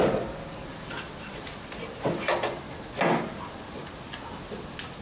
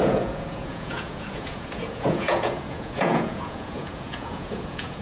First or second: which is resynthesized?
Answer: second